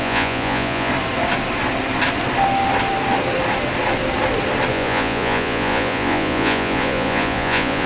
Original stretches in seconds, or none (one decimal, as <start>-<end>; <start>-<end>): 0.9-4.7

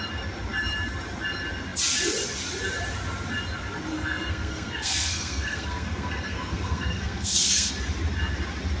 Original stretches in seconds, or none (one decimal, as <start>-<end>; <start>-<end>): 0.0-3.9; 7.7-8.8

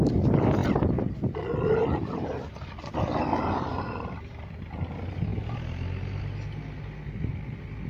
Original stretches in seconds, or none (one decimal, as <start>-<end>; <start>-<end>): 0.0-7.9

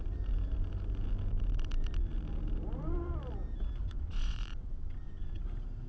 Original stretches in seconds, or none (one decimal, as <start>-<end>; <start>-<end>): 0.0-3.8; 5.4-5.9

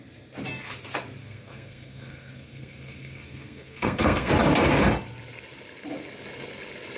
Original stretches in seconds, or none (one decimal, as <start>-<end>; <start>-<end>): 0.0-1.2; 4.3-7.0

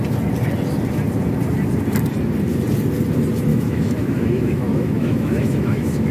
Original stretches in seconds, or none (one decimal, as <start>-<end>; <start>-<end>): 0.0-3.5